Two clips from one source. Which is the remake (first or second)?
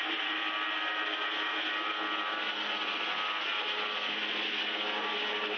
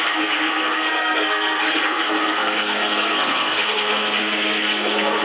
second